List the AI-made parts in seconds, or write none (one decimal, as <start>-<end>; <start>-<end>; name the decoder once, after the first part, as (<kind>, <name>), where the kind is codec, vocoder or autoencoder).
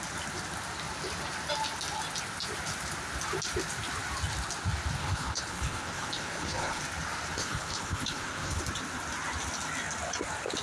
5.0-6.8 (codec, HILCodec); 7.4-8.6